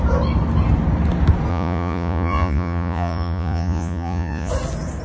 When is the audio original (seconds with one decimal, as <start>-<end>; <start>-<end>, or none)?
0.0-1.5; 4.5-5.0